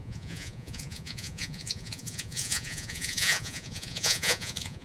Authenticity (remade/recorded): remade